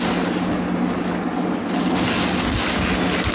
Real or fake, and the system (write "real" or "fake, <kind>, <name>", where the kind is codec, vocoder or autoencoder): real